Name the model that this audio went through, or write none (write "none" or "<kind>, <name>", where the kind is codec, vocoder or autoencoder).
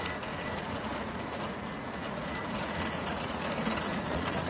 vocoder, Vocos